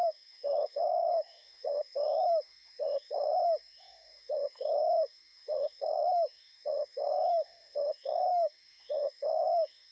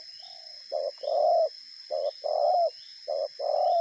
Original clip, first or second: second